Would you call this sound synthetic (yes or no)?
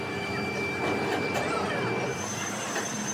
no